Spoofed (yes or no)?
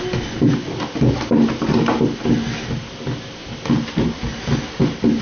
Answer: no